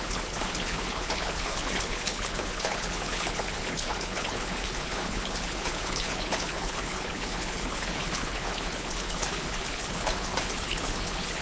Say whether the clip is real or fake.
fake